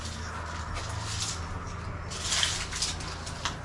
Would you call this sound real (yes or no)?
yes